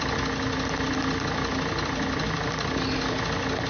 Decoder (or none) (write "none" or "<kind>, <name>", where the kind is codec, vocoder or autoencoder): none